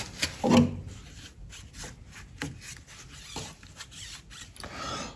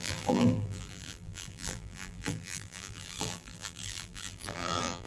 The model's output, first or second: second